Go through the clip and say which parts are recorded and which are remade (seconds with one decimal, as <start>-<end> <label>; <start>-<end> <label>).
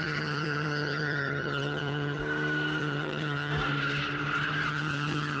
0.0-2.2 remade; 2.2-2.8 recorded; 2.8-3.5 remade; 3.5-4.7 recorded; 4.7-5.4 remade